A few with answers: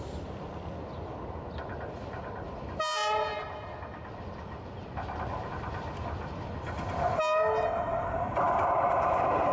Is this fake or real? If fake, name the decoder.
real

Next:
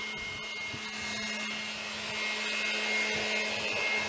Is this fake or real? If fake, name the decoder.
real